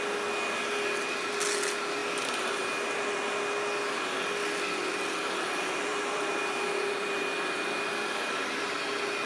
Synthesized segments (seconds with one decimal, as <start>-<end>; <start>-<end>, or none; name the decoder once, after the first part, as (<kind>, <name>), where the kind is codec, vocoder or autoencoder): 5.9-7.2 (vocoder, BigVGAN v2)